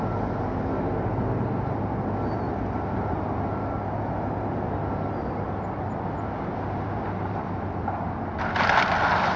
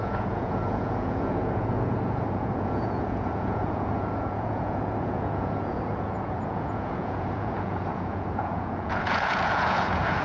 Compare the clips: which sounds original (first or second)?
first